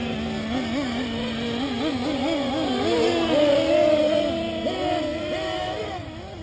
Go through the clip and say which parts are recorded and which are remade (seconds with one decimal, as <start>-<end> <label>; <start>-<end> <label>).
0.0-6.4 recorded